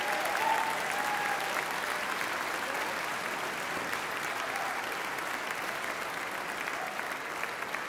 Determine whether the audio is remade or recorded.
recorded